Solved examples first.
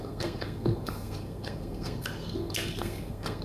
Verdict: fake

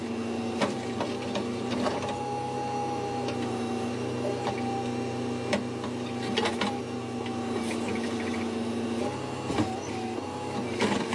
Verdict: real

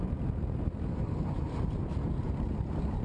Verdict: real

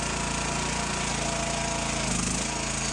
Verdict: real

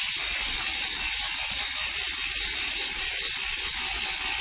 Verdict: real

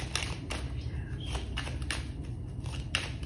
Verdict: real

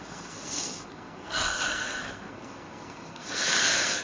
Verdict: fake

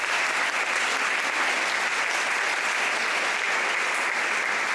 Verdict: real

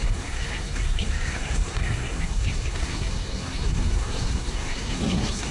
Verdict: fake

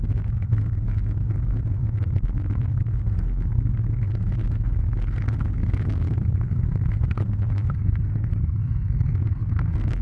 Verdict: fake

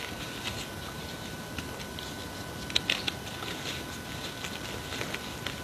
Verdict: real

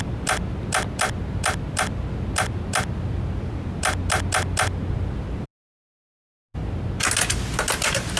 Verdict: real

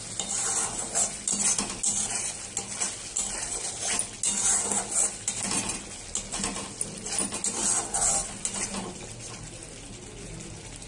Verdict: real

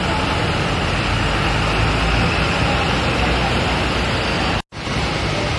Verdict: real